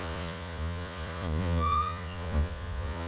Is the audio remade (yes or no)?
yes